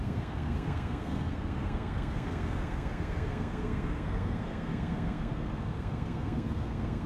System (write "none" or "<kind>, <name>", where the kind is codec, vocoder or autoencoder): codec, SNAC